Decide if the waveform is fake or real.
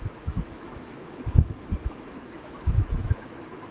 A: fake